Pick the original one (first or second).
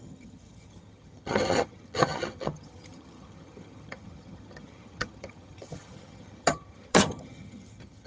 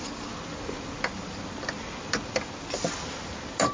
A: second